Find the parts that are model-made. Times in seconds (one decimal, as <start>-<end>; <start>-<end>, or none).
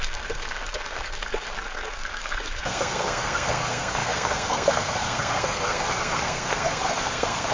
0.0-7.5